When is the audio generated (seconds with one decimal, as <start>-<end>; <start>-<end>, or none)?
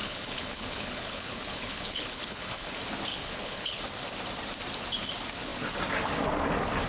0.0-2.7; 3.1-3.8